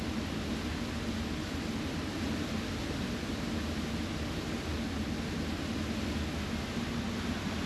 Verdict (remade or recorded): recorded